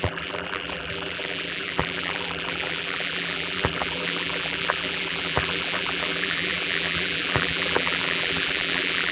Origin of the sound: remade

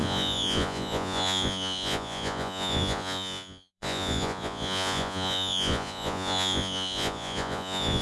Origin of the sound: remade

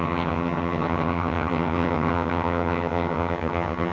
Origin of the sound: remade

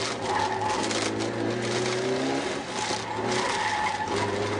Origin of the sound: recorded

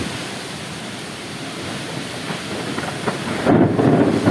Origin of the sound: remade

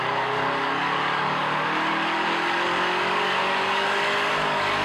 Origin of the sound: remade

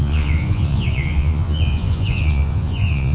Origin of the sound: remade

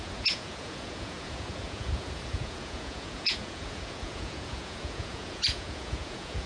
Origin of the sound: remade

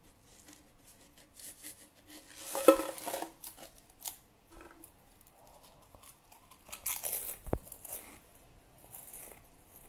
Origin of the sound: recorded